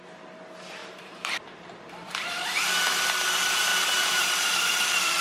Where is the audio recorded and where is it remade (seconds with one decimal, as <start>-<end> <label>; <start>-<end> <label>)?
0.0-0.8 recorded; 0.8-2.7 remade; 2.7-3.7 recorded; 3.7-5.2 remade